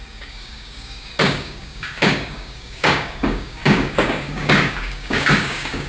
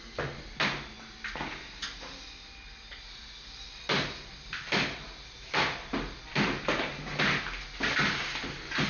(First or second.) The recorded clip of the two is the second